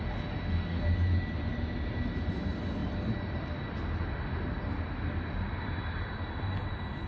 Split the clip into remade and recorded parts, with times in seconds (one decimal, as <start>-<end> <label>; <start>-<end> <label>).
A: 0.0-7.1 recorded